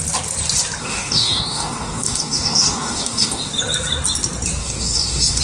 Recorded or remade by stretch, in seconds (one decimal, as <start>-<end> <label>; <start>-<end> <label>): 0.0-0.8 recorded; 0.8-3.5 remade; 3.5-4.6 recorded; 4.6-5.4 remade